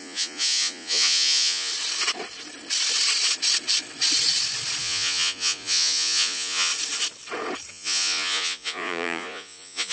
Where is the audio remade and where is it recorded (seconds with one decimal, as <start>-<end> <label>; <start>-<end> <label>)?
0.0-1.7 remade; 1.7-4.8 recorded; 4.8-6.7 remade; 6.7-7.7 recorded; 7.7-9.9 remade